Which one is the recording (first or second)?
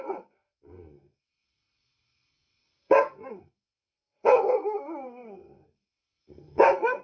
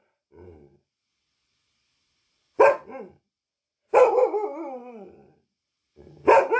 second